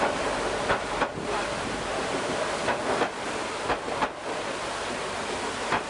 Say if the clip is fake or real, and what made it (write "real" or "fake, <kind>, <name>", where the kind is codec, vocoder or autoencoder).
real